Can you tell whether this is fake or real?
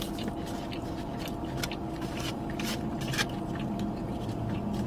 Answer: real